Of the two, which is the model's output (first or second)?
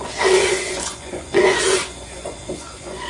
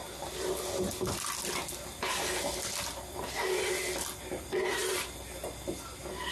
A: first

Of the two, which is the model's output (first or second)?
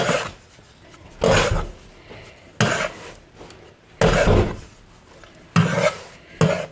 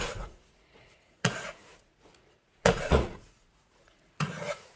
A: second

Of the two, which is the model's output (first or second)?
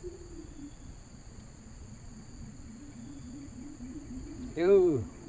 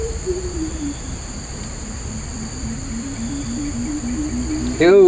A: first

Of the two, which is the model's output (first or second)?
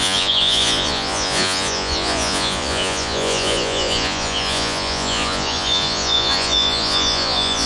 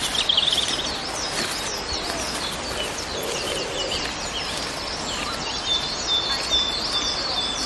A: first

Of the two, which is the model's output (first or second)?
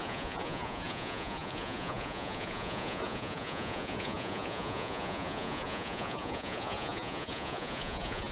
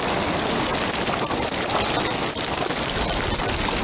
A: first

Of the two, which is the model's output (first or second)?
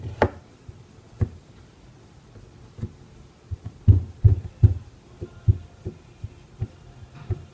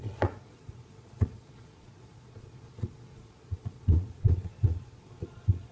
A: second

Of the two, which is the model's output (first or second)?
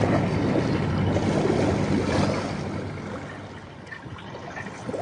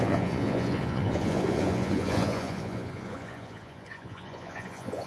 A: second